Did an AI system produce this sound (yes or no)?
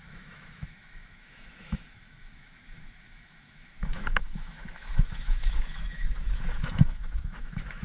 yes